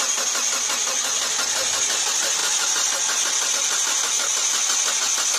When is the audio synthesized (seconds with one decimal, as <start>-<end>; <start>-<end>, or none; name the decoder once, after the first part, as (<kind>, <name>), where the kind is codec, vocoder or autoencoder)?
none